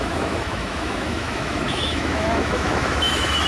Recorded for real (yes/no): no